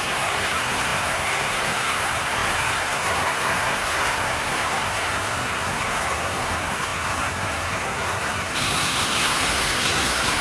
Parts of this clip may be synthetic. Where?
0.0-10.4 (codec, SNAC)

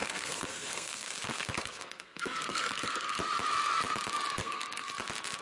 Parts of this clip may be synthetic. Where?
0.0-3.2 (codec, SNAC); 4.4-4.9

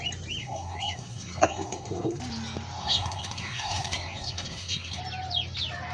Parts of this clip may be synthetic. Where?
0.4-2.2 (codec, SNAC); 2.8-5.0